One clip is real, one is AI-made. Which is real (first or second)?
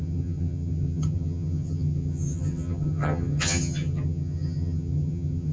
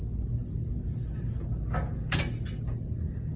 second